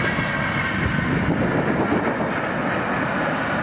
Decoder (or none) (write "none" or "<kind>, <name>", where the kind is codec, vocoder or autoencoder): none